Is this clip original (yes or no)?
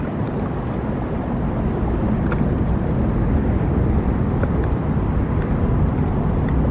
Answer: yes